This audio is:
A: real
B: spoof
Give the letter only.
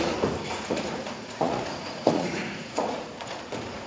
B